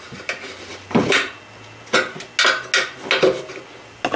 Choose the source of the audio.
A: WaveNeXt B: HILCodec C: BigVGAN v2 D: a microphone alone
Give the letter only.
D